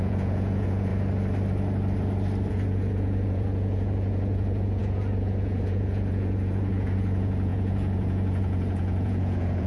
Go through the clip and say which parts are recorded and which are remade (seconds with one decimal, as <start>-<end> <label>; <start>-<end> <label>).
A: 0.0-0.9 remade; 0.9-2.5 recorded; 2.5-9.7 remade